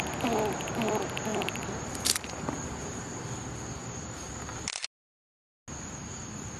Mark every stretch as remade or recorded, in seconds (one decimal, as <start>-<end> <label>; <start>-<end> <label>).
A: 0.0-1.3 recorded; 1.3-2.3 remade; 2.3-2.8 recorded; 2.8-3.3 remade; 3.3-3.8 recorded; 3.8-4.4 remade; 4.4-6.6 recorded